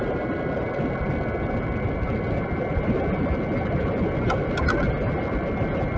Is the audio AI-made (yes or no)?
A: no